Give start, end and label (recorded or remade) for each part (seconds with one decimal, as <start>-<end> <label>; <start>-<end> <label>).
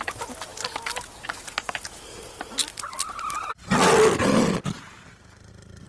0.0-5.9 recorded